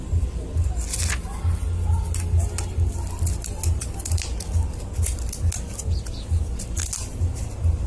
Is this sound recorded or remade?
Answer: recorded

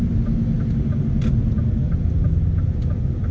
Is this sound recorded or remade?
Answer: recorded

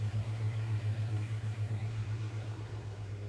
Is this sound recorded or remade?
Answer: remade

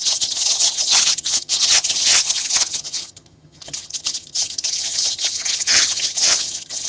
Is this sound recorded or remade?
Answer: remade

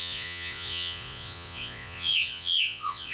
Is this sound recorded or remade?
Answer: remade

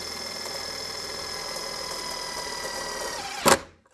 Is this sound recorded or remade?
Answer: recorded